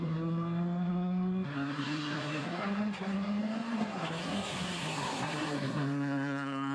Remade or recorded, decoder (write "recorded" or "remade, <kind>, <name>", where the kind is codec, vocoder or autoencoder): remade, codec, SNAC